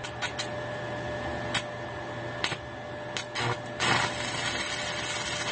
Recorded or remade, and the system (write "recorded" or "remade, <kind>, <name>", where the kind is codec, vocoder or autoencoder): recorded